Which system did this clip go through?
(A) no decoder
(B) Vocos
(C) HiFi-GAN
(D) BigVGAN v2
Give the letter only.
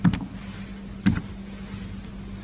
A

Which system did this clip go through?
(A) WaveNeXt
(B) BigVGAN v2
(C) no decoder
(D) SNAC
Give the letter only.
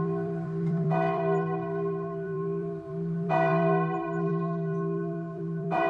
B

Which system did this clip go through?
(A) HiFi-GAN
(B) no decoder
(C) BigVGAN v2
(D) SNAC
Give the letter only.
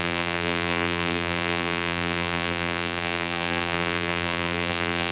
C